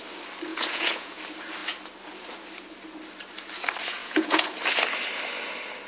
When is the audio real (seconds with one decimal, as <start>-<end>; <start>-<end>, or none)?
0.0-0.5; 1.2-4.0; 4.6-5.9